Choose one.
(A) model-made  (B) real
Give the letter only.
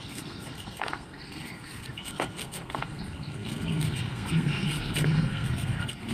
A